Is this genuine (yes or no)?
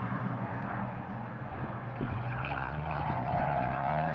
no